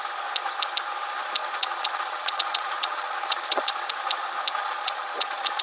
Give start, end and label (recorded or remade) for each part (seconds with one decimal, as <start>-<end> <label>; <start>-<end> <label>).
0.0-1.4 recorded; 1.4-3.9 remade; 3.9-4.6 recorded; 4.6-5.6 remade